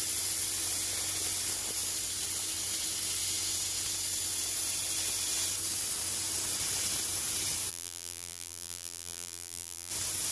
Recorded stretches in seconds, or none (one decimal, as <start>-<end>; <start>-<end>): 0.0-7.7; 9.9-10.3